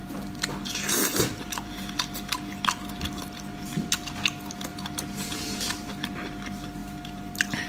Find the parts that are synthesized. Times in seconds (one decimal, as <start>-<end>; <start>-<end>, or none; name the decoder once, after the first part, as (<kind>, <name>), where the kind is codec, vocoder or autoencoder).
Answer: none